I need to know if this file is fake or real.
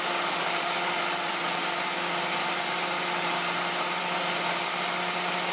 real